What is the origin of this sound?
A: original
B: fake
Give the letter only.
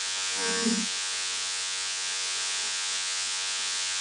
B